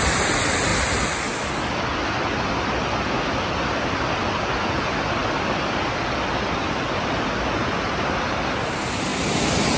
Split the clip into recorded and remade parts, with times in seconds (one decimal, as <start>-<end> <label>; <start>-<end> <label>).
0.0-9.8 recorded